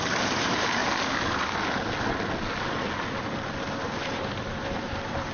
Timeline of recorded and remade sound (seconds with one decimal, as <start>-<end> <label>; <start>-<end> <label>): 0.0-0.8 remade; 0.8-4.0 recorded; 4.0-5.3 remade